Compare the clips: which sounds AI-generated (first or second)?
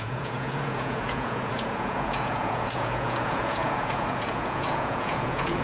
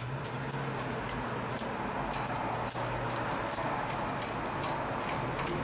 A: first